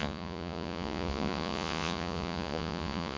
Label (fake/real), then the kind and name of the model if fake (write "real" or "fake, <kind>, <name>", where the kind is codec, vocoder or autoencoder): fake, vocoder, Vocos